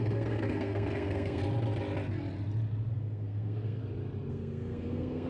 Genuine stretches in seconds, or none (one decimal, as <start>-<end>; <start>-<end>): 1.4-2.9; 3.8-4.3